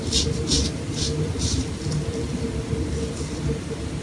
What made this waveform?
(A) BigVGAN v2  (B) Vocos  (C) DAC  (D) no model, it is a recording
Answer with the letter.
A